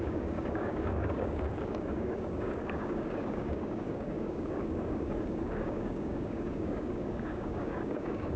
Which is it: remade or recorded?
remade